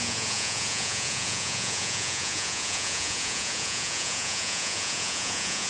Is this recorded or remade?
remade